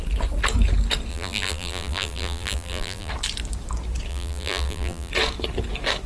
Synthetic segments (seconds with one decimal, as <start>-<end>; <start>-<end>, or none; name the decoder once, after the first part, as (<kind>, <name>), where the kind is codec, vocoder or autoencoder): 1.1-3.1 (vocoder, BigVGAN v2); 4.1-5.1